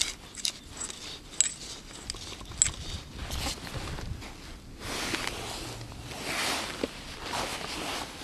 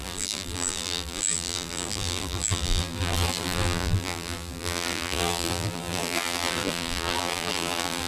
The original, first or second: first